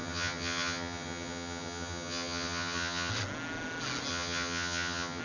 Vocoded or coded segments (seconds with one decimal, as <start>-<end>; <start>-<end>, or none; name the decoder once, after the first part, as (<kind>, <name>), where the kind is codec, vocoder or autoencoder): 0.0-3.1 (vocoder, HiFi-GAN); 4.1-5.2